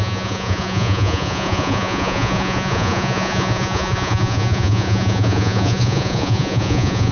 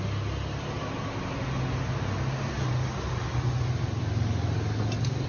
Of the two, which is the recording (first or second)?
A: second